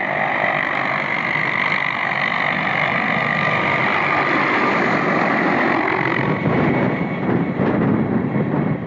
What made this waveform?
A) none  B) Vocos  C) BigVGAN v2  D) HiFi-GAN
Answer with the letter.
A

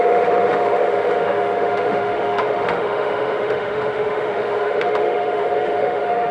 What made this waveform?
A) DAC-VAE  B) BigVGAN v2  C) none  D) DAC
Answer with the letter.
A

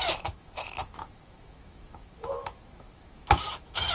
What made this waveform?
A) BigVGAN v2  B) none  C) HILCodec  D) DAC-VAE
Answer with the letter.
D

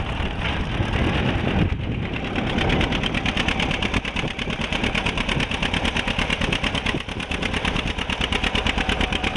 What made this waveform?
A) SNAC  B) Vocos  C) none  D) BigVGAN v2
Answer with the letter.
D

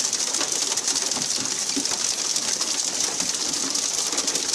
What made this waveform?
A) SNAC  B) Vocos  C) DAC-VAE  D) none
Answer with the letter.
D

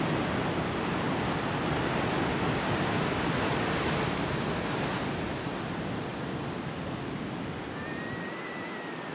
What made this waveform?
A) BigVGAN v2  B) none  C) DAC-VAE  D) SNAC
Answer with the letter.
B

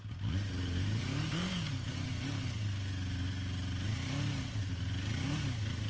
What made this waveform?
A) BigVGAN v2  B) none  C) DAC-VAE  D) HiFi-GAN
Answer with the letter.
B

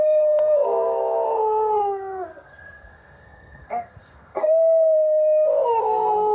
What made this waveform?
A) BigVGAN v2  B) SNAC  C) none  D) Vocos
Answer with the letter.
B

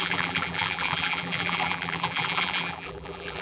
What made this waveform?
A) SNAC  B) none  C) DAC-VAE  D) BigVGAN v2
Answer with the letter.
D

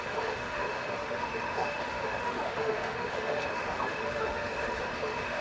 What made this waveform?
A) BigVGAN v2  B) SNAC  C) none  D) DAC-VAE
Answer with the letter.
D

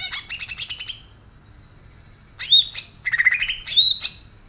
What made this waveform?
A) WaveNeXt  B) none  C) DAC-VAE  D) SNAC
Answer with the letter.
B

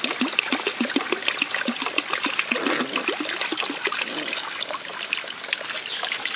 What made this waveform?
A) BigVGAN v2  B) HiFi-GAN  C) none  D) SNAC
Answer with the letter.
C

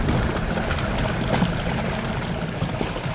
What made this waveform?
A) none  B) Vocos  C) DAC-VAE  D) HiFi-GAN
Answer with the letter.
A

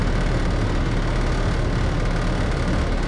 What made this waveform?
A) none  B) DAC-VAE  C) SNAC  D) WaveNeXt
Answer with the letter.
A